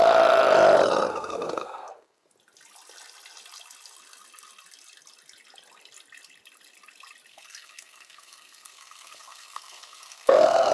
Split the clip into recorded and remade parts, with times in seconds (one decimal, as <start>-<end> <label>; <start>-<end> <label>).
0.0-1.1 recorded; 1.1-2.3 remade; 2.3-7.3 recorded; 7.3-10.7 remade